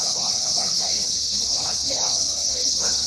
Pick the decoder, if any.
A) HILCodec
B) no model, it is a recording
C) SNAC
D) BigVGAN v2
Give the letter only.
A